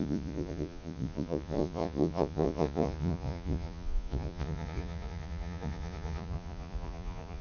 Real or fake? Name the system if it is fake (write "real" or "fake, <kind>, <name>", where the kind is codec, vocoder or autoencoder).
fake, vocoder, Vocos